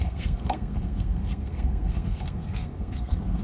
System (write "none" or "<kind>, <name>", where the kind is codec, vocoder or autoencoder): codec, SNAC